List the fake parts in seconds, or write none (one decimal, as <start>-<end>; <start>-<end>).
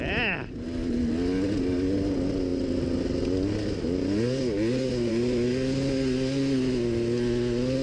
none